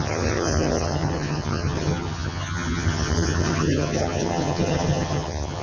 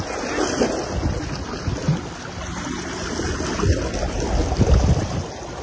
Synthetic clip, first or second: first